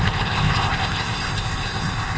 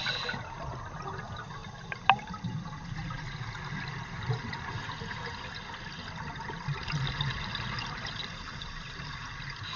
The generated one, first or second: first